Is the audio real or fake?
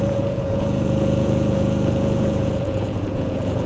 fake